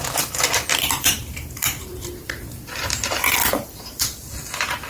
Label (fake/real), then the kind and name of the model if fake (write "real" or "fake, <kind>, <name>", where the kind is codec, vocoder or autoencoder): fake, vocoder, BigVGAN v2